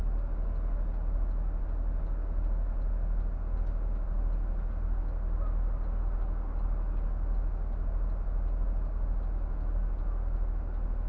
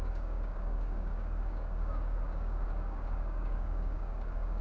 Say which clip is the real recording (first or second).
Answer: first